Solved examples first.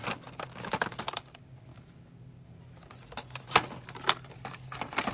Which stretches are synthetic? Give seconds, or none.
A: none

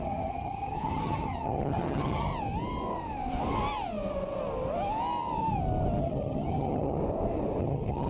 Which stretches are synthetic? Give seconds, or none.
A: 0.0-2.3 (vocoder, HiFi-GAN); 6.0-7.0; 7.6-8.1